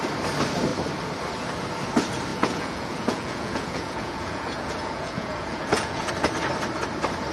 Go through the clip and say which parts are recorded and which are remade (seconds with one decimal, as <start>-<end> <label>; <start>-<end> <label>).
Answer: 0.0-2.3 recorded; 2.3-6.1 remade; 6.1-7.3 recorded